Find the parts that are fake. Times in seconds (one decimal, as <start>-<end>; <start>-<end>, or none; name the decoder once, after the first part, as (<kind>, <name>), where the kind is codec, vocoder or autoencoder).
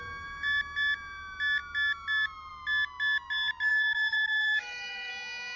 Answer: 3.7-5.1 (autoencoder, DAC-VAE)